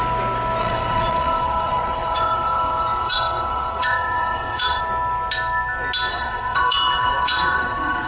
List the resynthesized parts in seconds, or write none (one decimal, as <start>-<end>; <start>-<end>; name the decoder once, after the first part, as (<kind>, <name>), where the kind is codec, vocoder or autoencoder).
0.6-4.8 (vocoder, WaveNeXt); 6.1-8.1